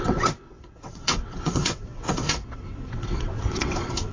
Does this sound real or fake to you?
fake